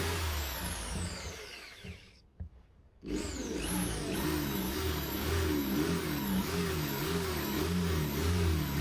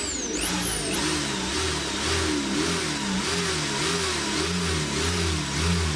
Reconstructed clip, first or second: first